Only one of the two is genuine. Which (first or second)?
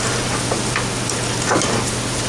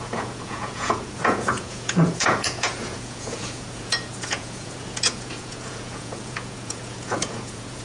first